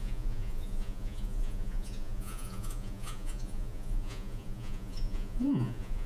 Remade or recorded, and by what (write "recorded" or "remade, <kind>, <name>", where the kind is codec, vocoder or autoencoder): remade, vocoder, Vocos